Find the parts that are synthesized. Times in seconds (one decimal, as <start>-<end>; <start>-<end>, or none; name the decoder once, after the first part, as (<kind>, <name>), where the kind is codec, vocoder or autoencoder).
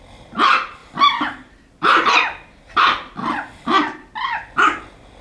none